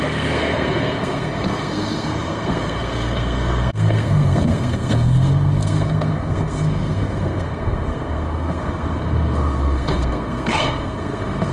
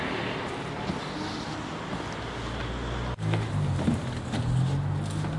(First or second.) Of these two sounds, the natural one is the second